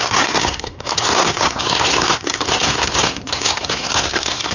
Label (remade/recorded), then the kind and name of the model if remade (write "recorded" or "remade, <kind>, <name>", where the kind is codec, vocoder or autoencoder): remade, codec, SNAC